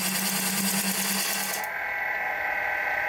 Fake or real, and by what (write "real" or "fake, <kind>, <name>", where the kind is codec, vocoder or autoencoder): real